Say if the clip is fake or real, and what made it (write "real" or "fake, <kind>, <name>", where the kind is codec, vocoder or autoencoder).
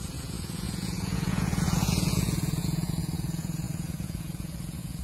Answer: fake, vocoder, Vocos